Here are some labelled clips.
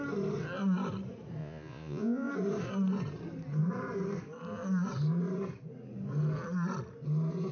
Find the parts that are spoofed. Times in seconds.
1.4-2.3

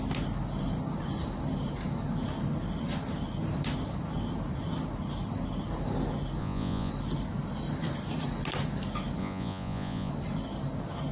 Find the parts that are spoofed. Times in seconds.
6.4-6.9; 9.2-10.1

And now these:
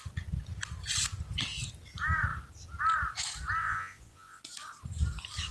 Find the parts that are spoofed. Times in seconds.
3.6-4.4